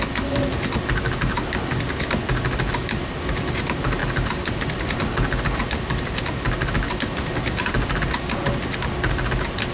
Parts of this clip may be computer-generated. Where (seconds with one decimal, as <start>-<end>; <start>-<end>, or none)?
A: none